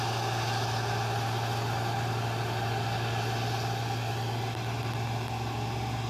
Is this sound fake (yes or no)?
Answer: no